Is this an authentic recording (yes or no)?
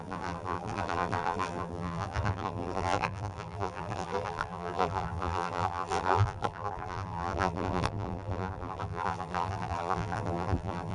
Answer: no